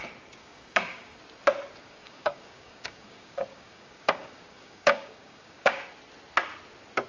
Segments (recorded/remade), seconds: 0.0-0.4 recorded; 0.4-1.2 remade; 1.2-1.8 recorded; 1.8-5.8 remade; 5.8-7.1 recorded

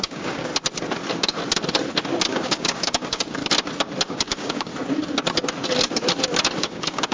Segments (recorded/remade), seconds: 0.0-0.5 remade; 0.5-2.3 recorded; 2.3-3.4 remade; 3.4-4.1 recorded; 4.1-4.7 remade; 4.7-6.6 recorded; 6.6-7.1 remade

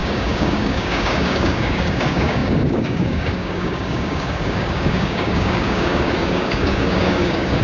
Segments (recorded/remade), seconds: 0.0-7.6 remade

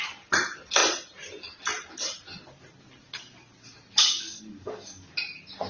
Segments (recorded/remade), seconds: 0.0-4.0 recorded; 4.0-5.1 remade; 5.1-5.7 recorded